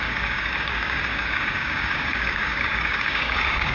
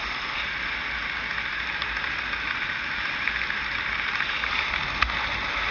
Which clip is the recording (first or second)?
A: second